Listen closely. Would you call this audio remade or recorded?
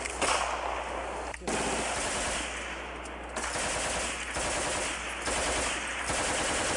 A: recorded